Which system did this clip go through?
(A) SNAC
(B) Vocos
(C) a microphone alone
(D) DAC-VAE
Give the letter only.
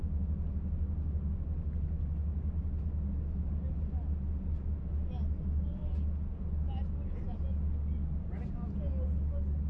C